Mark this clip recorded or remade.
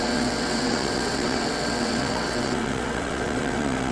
remade